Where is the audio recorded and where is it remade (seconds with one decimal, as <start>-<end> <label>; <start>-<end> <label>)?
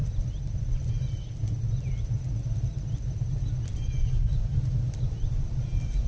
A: 0.0-6.1 recorded